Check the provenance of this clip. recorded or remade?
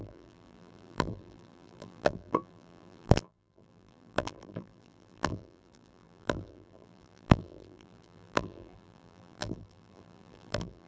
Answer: remade